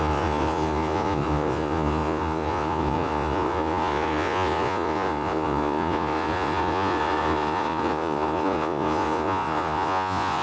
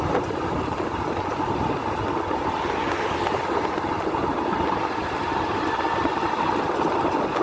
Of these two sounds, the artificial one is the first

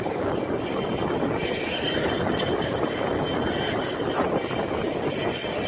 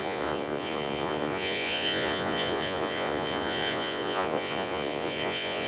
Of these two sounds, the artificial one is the second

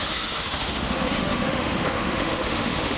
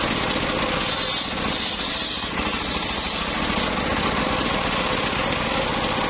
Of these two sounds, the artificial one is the first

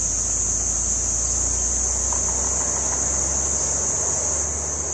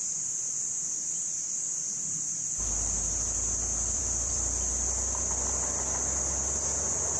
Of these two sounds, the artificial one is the second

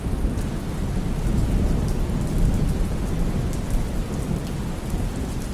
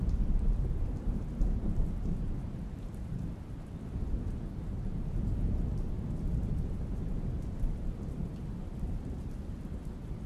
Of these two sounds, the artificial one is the second